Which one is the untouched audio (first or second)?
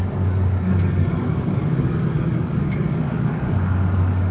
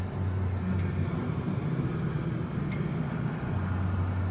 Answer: second